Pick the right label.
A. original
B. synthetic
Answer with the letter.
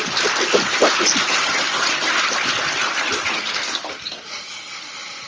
A